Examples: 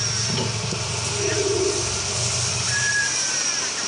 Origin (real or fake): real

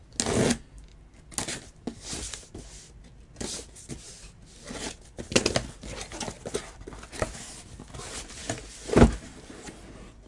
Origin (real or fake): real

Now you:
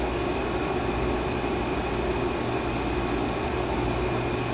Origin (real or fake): real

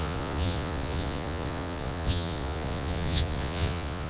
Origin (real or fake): fake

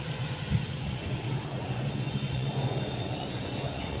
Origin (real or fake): fake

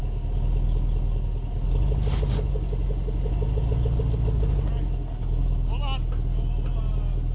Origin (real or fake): real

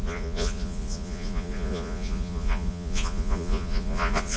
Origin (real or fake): fake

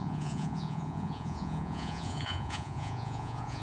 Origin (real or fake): fake